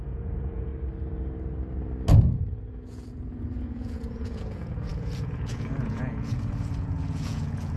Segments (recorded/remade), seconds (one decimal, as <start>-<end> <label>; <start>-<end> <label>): 0.0-0.7 remade; 0.7-2.7 recorded; 2.7-7.8 remade